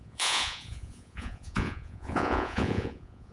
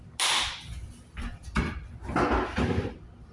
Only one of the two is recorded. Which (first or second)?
second